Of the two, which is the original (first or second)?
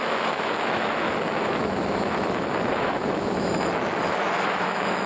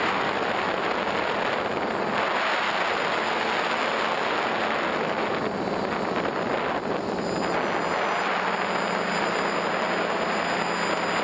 second